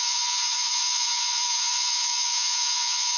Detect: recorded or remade remade